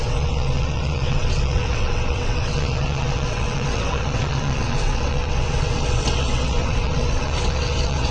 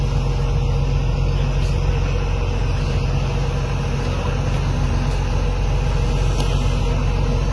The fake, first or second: first